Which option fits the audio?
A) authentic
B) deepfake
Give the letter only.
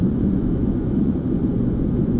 B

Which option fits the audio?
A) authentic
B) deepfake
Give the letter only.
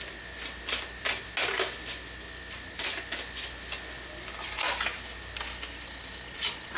A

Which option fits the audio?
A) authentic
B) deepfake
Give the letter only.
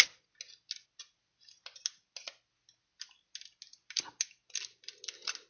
A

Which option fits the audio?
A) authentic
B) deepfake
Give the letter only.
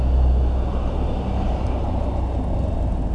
A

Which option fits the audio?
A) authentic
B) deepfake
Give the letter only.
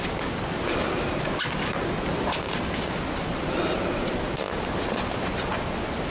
A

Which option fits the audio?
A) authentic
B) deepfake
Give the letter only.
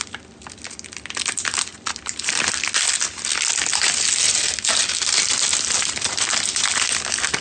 A